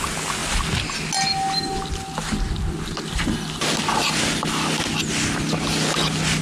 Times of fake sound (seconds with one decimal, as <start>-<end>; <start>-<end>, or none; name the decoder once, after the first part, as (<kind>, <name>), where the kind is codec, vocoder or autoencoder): none